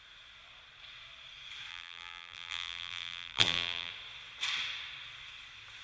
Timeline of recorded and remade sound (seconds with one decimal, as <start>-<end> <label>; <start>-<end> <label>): 0.0-1.7 recorded; 1.7-3.9 remade; 3.9-5.8 recorded